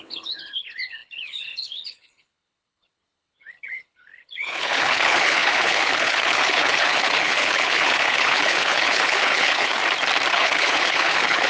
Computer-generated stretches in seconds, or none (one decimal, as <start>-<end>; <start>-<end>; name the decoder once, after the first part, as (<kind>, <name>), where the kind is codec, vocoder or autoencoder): 0.0-9.8 (codec, HILCodec); 10.3-11.5